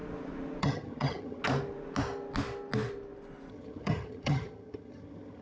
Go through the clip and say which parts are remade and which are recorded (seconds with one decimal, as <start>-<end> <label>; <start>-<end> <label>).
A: 0.0-0.6 recorded; 0.6-1.4 remade; 1.4-3.5 recorded; 3.5-5.4 remade